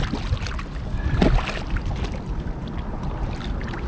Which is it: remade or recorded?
recorded